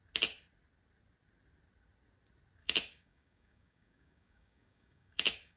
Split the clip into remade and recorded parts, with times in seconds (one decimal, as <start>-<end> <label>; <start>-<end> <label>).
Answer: 0.0-2.6 recorded; 2.6-5.6 remade